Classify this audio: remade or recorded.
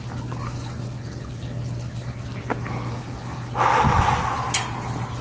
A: recorded